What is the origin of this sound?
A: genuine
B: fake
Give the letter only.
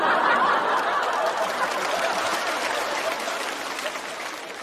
A